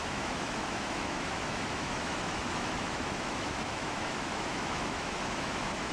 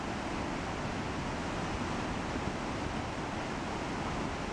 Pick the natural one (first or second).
second